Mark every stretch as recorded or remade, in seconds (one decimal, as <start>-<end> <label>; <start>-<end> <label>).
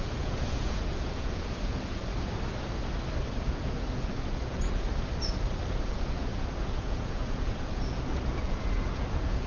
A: 0.0-2.1 remade; 2.1-3.3 recorded; 3.3-4.9 remade; 4.9-5.8 recorded; 5.8-9.5 remade